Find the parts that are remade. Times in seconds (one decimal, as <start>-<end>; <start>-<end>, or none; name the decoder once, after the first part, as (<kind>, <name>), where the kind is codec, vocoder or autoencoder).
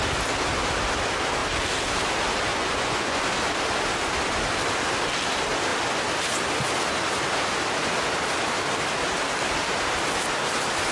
2.5-3.2 (vocoder, Vocos)